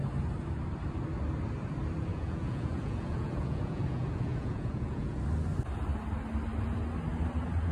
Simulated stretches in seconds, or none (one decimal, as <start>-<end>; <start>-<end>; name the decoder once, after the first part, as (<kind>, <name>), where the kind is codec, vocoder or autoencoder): 2.1-5.2 (vocoder, Vocos)